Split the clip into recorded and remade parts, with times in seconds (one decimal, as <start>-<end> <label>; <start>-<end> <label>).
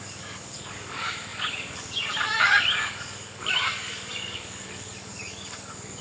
0.0-6.0 remade